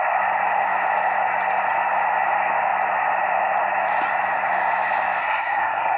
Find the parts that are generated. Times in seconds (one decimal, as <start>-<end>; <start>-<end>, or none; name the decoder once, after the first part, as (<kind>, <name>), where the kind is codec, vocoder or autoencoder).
5.2-6.0 (codec, SNAC)